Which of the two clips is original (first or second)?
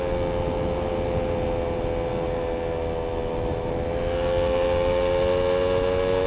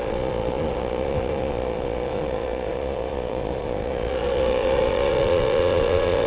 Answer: first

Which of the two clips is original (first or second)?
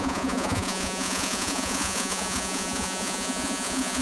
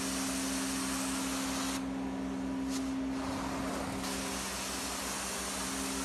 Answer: second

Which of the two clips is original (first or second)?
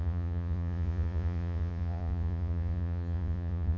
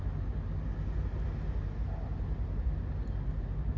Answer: second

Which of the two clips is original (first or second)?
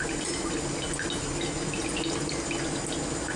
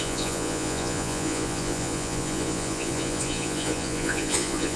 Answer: first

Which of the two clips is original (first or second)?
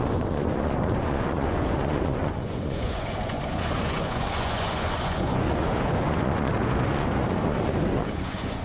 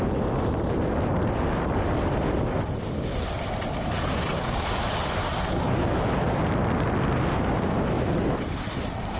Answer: second